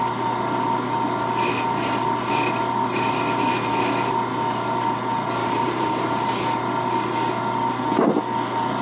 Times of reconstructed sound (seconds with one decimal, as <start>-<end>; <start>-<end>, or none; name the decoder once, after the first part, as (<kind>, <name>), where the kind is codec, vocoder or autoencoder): 5.4-6.3 (vocoder, BigVGAN v2)